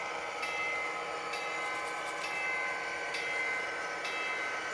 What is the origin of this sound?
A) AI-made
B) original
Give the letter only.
B